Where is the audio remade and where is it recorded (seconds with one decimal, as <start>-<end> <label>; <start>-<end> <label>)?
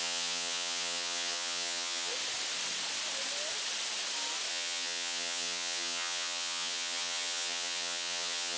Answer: 0.0-2.1 remade; 2.1-4.5 recorded; 4.5-8.6 remade